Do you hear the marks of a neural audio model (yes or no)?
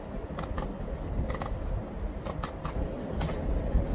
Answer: no